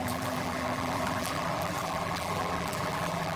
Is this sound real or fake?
fake